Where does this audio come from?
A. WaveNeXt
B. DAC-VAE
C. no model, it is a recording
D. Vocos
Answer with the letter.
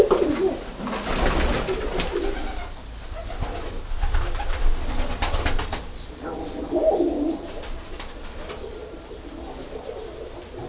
C